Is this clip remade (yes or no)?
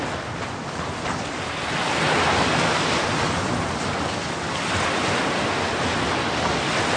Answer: no